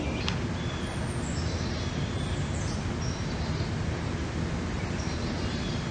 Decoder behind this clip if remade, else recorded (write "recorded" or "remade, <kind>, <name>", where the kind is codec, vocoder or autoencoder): recorded